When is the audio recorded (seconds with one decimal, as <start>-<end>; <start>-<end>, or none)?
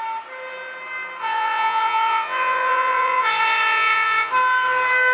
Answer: 0.0-1.2; 4.3-5.1